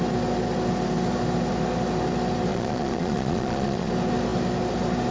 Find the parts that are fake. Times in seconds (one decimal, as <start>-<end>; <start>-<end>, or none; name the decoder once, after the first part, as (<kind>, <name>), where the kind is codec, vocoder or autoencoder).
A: 2.5-3.9 (vocoder, Vocos)